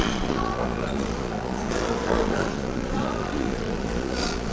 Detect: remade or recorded remade